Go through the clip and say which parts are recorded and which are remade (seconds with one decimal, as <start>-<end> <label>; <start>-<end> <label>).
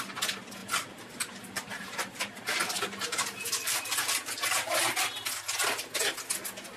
0.0-0.6 recorded; 0.6-4.7 remade; 4.7-6.8 recorded